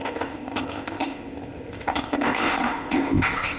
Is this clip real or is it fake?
fake